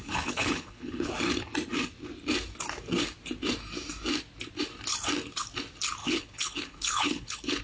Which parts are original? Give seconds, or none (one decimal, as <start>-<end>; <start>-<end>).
1.1-6.0